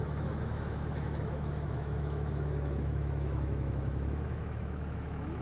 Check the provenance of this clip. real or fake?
fake